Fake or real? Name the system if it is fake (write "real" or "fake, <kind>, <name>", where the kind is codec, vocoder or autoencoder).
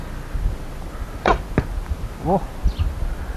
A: real